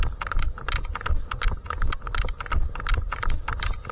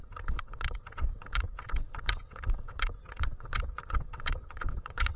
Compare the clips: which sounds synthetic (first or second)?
second